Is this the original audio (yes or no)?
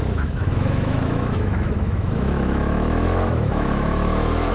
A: no